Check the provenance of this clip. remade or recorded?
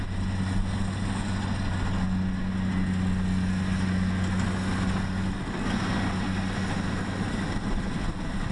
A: recorded